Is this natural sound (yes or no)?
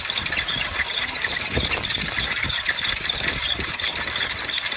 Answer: no